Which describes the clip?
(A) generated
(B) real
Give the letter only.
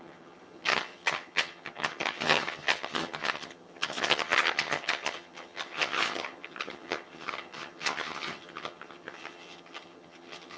A